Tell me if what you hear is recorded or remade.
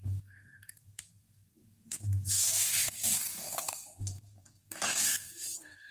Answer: remade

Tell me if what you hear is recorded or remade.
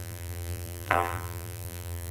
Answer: remade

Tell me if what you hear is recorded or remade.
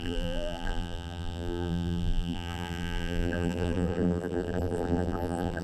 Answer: remade